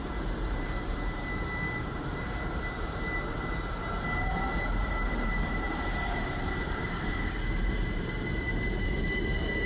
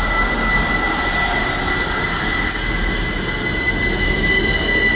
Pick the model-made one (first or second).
first